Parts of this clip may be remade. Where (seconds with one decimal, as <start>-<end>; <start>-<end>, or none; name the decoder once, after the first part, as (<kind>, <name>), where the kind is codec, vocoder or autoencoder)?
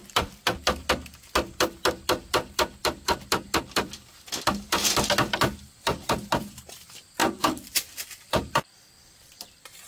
0.0-0.9 (vocoder, BigVGAN v2); 2.8-5.0; 7.2-9.9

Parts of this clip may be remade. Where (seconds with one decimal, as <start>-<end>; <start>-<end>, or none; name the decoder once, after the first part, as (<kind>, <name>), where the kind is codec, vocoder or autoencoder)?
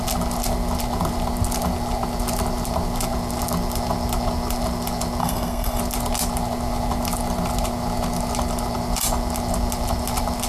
5.2-5.8 (codec, SNAC)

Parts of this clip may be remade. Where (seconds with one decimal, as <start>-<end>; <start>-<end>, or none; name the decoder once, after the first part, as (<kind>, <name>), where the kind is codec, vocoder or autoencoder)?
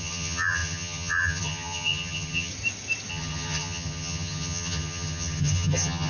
0.0-2.5 (vocoder, HiFi-GAN); 3.1-6.1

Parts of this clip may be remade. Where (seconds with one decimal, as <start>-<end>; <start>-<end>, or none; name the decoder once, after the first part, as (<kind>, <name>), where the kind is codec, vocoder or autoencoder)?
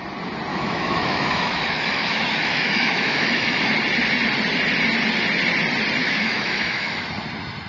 0.5-3.7 (autoencoder, DAC-VAE); 6.0-7.1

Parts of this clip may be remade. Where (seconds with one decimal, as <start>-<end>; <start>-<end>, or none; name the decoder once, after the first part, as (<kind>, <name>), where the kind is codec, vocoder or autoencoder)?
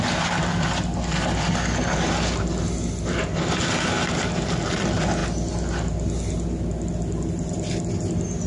none